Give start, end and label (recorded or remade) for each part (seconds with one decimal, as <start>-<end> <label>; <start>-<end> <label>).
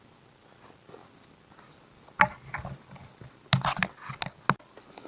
0.0-5.1 recorded